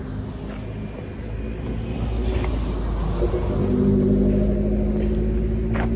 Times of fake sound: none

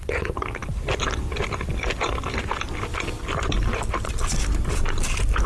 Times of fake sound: none